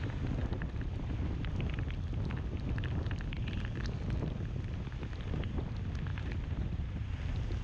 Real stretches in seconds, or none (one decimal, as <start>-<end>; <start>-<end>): 0.0-0.4; 1.4-6.1; 7.1-7.6